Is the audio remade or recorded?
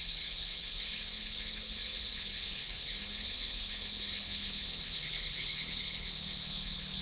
remade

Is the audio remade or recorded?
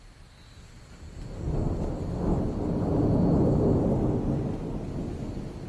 recorded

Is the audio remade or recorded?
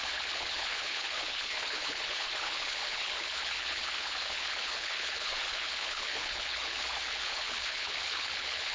remade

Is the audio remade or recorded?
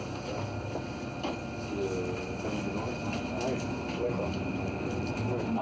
recorded